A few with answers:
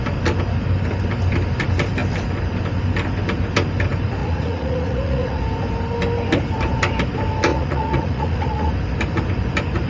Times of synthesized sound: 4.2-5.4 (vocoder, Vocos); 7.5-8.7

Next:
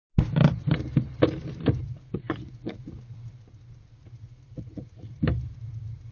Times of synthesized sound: 1.8-3.3 (vocoder, Vocos); 3.9-5.2

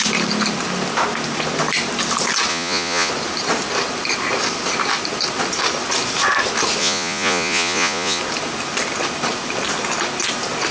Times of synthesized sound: 2.5-3.1 (vocoder, Vocos); 6.8-8.2

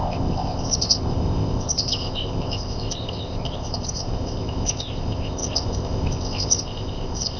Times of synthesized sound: 0.0-7.4 (codec, ZipCodec)

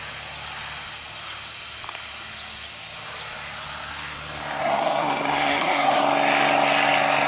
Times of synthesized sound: 4.6-6.0 (codec, SNAC)

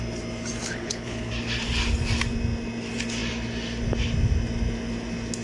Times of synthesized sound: 0.6-1.3 (codec, HILCodec)

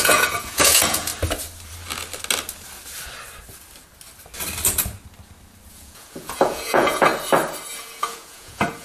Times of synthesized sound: 0.0-1.1 (vocoder, Vocos); 5.7-7.1; 7.7-8.8